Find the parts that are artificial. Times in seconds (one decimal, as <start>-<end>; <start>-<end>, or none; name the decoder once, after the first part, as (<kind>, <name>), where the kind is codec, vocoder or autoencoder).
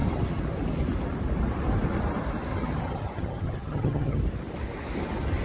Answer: 2.5-4.2 (vocoder, HiFi-GAN)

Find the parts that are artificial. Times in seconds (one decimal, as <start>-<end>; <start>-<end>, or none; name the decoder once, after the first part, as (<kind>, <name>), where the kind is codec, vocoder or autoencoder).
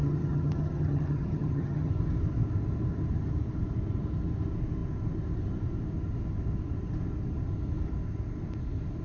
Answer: 0.0-1.9 (vocoder, HiFi-GAN)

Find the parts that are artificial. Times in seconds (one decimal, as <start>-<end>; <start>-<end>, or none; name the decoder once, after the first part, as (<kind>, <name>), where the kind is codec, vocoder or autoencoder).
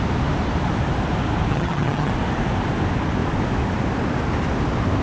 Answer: 1.5-2.1 (vocoder, HiFi-GAN)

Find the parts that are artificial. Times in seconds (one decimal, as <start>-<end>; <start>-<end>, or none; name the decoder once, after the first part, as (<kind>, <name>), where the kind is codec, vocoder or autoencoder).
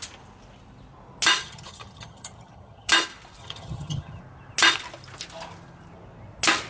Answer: 1.4-2.9 (vocoder, HiFi-GAN); 3.4-4.2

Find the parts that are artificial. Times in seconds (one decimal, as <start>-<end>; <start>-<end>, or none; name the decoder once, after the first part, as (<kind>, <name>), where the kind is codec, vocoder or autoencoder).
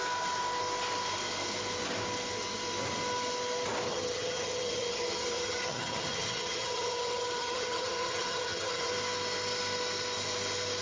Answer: 3.9-8.9 (vocoder, HiFi-GAN)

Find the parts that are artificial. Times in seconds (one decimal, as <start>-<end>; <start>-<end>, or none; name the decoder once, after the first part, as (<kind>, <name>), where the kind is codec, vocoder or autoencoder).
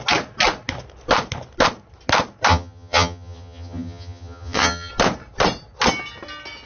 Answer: 2.5-4.9 (vocoder, HiFi-GAN)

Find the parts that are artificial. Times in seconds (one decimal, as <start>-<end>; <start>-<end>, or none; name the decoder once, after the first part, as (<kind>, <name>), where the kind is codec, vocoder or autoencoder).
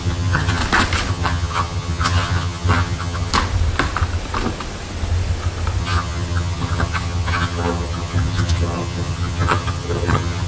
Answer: 0.0-0.6 (vocoder, HiFi-GAN); 1.1-3.3; 5.8-10.5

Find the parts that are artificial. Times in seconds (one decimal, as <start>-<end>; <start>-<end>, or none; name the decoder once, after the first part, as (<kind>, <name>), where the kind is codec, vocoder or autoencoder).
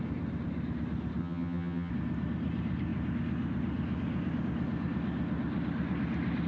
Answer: 1.2-1.9 (vocoder, HiFi-GAN)